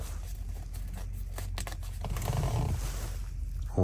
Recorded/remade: recorded